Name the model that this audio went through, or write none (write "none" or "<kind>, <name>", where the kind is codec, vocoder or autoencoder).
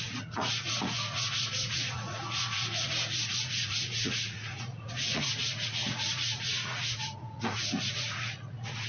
vocoder, Vocos